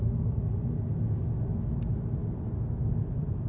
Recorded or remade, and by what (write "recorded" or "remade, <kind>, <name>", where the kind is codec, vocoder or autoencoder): recorded